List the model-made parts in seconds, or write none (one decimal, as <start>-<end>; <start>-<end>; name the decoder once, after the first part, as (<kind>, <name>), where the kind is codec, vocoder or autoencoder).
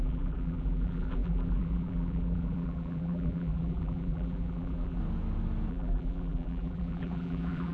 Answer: 0.0-5.0 (vocoder, BigVGAN v2); 5.7-7.7